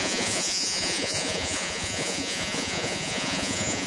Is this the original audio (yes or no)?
no